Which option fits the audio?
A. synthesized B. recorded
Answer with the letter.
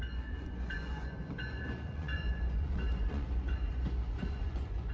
A